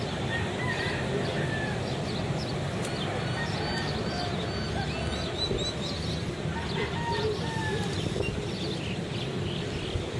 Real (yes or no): yes